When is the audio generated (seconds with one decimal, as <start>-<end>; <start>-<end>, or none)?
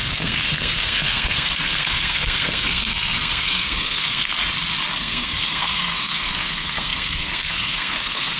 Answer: 0.0-4.3; 5.0-8.4